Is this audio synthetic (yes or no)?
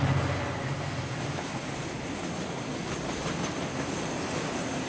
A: no